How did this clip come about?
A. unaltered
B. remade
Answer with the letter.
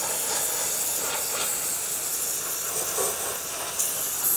A